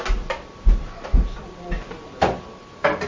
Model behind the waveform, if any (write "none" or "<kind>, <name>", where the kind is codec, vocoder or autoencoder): none